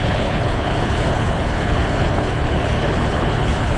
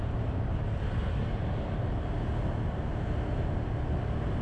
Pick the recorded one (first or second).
second